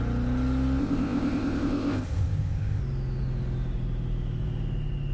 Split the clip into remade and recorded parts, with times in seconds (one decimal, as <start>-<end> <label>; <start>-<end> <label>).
0.0-0.8 recorded; 0.8-2.8 remade; 2.8-5.1 recorded